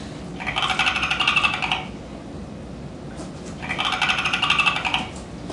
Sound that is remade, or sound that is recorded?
recorded